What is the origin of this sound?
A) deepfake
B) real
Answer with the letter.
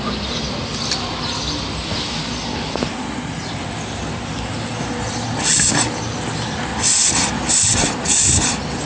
B